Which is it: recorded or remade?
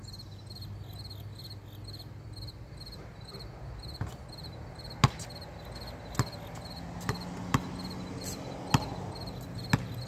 recorded